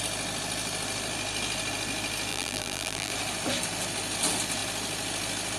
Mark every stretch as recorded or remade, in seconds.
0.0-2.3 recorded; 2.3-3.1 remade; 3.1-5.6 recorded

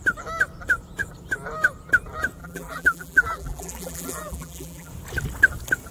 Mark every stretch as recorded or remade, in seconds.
0.0-2.4 recorded; 2.4-4.9 remade; 4.9-5.9 recorded

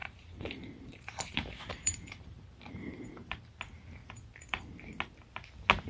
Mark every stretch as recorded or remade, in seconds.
0.0-3.5 remade; 3.5-4.0 recorded; 4.0-4.6 remade; 4.6-5.9 recorded

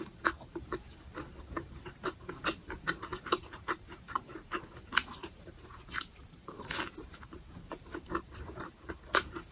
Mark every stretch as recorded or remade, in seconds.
0.0-9.5 remade

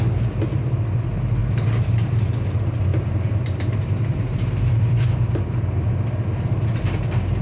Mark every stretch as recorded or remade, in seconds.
0.0-1.4 recorded; 1.4-2.2 remade; 2.2-2.9 recorded; 2.9-5.9 remade; 5.9-7.4 recorded